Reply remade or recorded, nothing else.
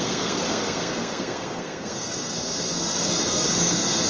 remade